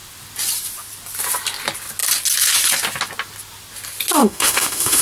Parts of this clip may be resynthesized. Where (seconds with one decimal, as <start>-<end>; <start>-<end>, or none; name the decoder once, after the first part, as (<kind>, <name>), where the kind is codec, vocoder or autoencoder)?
4.2-5.0 (autoencoder, DAC-VAE)

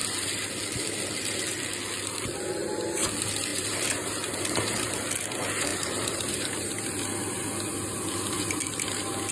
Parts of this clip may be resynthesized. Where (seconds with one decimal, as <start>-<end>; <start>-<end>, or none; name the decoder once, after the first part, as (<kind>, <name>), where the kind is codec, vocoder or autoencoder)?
3.5-4.9 (vocoder, BigVGAN v2); 5.7-6.8

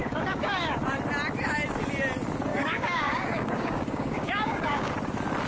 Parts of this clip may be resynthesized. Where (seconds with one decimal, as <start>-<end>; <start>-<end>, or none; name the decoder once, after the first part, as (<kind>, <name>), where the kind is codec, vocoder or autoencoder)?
0.0-0.8 (codec, DAC); 2.5-4.9

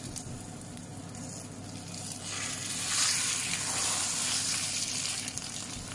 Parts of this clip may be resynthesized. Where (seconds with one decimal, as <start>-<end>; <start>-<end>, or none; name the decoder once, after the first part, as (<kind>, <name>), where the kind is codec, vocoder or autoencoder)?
0.0-0.9 (vocoder, BigVGAN v2); 4.4-5.9

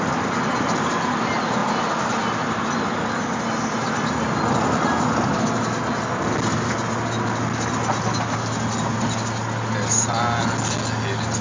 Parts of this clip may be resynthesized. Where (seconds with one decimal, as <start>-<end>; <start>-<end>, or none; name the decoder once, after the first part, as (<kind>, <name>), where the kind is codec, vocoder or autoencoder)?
none

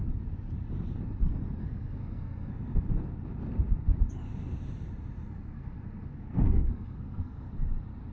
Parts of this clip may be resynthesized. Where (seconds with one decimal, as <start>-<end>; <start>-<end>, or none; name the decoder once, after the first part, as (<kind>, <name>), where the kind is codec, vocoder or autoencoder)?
1.6-2.8 (codec, SNAC); 5.2-7.5

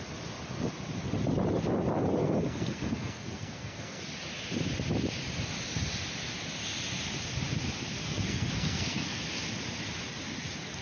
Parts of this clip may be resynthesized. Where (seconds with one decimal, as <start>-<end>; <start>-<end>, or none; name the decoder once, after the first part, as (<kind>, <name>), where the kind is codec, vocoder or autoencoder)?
2.2-4.0 (codec, SNAC); 8.0-9.2